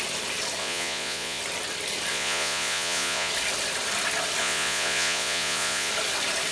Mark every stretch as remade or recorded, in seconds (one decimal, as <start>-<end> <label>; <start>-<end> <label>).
0.0-0.6 recorded; 0.6-1.4 remade; 1.4-2.1 recorded; 2.1-3.3 remade; 3.3-4.4 recorded; 4.4-5.9 remade; 5.9-6.5 recorded